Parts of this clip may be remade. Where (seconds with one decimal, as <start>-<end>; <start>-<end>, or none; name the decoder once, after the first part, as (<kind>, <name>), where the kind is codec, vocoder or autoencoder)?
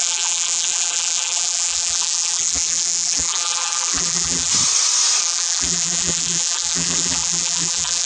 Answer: 0.0-4.5 (vocoder, BigVGAN v2); 5.2-8.1